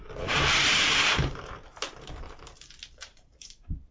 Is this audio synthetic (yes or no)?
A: yes